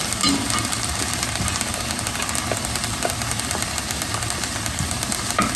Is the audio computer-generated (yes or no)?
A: no